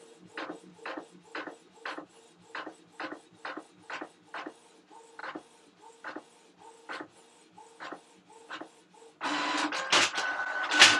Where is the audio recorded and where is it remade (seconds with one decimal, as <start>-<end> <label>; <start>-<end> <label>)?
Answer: 0.0-11.0 recorded